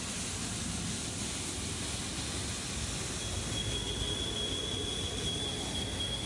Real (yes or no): yes